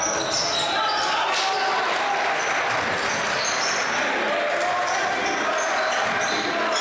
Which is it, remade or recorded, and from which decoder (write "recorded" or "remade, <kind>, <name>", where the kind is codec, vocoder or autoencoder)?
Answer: recorded